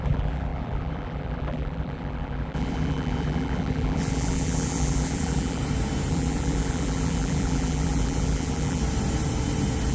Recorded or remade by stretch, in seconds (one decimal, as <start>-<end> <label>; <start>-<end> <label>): 0.0-5.6 remade; 5.6-6.1 recorded; 6.1-8.8 remade; 8.8-9.9 recorded